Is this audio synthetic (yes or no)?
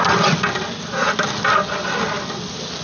no